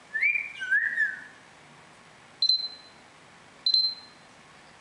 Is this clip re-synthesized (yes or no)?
no